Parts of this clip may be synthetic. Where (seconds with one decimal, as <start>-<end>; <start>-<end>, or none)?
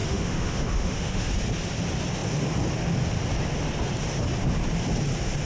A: 0.0-1.3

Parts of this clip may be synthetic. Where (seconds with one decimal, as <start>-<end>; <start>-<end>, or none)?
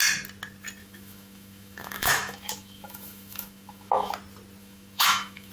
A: 0.8-4.1; 4.6-5.5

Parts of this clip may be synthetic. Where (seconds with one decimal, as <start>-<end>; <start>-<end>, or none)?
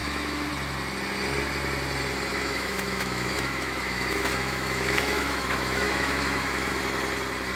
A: 0.0-0.5; 2.3-6.8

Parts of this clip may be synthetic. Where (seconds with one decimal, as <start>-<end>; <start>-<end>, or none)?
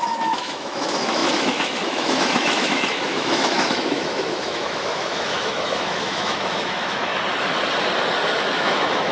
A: 0.0-7.1; 8.4-9.1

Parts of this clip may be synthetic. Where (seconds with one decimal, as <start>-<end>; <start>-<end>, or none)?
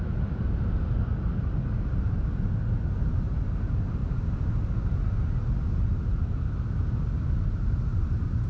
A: none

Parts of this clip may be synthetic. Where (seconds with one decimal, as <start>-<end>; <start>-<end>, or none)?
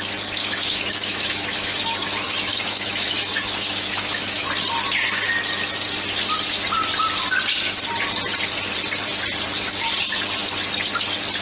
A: 0.4-4.5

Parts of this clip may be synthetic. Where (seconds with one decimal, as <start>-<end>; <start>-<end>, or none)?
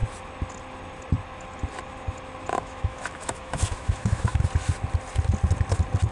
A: 2.5-4.4